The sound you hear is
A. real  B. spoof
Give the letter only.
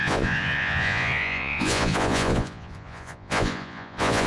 B